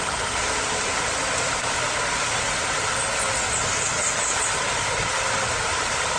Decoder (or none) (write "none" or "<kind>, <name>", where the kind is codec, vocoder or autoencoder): none